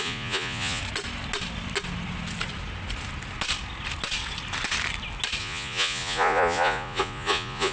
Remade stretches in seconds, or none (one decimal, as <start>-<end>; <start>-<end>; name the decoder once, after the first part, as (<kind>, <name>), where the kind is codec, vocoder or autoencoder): 0.0-0.8 (vocoder, Vocos); 5.4-7.7